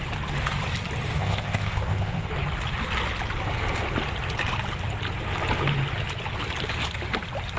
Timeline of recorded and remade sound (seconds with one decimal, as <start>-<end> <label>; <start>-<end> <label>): 0.0-1.2 recorded; 1.2-2.3 remade; 2.3-7.6 recorded